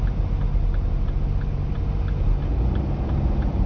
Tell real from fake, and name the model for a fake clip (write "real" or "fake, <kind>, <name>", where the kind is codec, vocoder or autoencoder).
real